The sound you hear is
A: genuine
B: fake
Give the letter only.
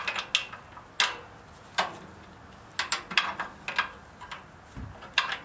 A